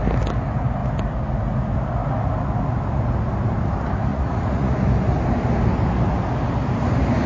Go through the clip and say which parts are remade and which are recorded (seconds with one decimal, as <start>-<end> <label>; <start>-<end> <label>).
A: 0.0-4.1 recorded; 4.1-4.7 remade; 4.7-7.3 recorded